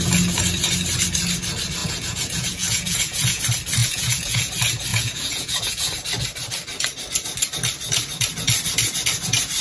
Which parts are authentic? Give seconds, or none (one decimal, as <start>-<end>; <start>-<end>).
0.0-1.8; 3.4-3.8; 4.5-4.9; 5.9-9.6